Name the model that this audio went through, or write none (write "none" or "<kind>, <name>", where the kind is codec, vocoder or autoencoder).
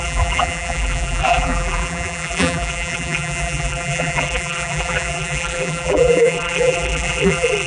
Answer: vocoder, BigVGAN v2